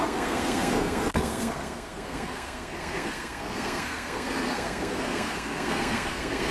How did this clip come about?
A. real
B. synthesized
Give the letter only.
B